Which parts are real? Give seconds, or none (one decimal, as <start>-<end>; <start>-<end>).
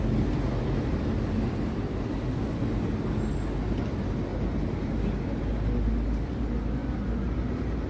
0.0-7.9